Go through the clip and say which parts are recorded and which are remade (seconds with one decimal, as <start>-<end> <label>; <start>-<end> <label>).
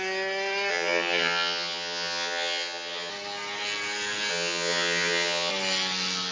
0.0-0.7 recorded; 0.7-3.1 remade; 3.1-4.3 recorded; 4.3-5.5 remade; 5.5-6.3 recorded